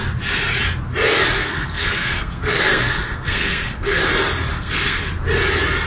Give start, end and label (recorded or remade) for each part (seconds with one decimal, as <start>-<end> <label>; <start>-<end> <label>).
0.0-1.4 recorded; 1.4-4.0 remade; 4.0-4.5 recorded; 4.5-5.0 remade; 5.0-5.9 recorded